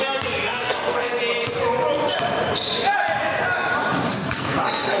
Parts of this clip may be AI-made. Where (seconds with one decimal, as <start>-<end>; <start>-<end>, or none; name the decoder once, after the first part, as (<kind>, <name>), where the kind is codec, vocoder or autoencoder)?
0.0-1.1 (codec, SNAC); 4.1-5.0